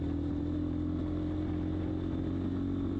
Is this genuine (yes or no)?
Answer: yes